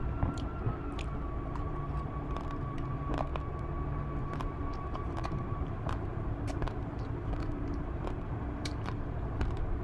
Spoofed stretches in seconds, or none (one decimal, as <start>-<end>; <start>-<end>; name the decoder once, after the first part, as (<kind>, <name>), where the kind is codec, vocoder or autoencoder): 0.0-0.5 (vocoder, BigVGAN v2); 1.4-3.3; 4.2-9.8